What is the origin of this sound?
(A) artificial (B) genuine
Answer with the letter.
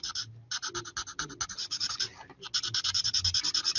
B